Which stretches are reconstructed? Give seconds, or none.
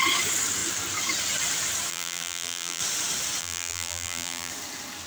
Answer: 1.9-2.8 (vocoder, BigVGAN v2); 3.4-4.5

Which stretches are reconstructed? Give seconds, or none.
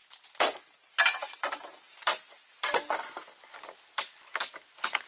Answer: none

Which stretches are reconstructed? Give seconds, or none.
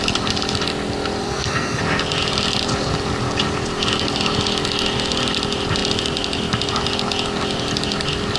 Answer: 1.2-1.8 (codec, SNAC)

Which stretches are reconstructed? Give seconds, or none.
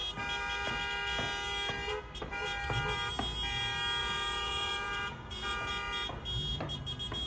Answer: 4.0-5.7 (vocoder, Vocos)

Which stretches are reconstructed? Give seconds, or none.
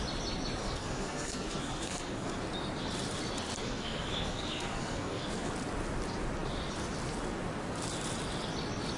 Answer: 0.6-2.4 (codec, SNAC); 3.6-5.5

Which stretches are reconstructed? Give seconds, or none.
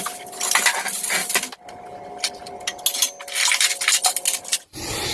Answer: none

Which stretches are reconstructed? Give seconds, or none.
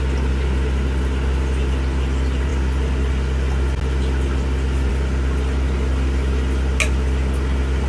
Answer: none